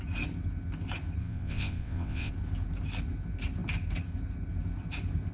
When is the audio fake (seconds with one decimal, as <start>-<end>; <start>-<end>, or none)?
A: 1.2-2.3